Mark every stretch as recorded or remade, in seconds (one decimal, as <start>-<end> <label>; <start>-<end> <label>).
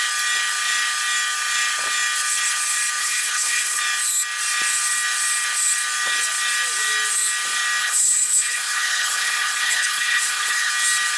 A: 0.0-3.0 recorded; 3.0-3.8 remade; 3.8-7.8 recorded; 7.8-10.7 remade; 10.7-11.2 recorded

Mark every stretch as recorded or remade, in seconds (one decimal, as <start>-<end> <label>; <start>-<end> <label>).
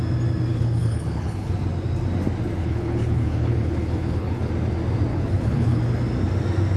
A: 0.0-0.5 recorded; 0.5-1.5 remade; 1.5-2.6 recorded; 2.6-4.5 remade; 4.5-5.1 recorded; 5.1-5.8 remade; 5.8-6.8 recorded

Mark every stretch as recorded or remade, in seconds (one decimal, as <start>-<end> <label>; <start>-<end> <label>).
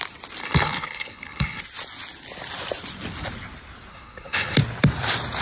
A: 0.0-0.4 recorded; 0.4-1.6 remade; 1.6-3.9 recorded; 3.9-4.6 remade; 4.6-5.4 recorded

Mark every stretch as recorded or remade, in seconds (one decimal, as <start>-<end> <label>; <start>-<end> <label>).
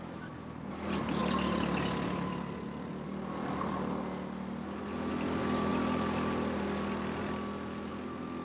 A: 0.0-8.4 recorded